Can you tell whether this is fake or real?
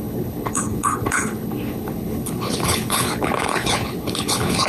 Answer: fake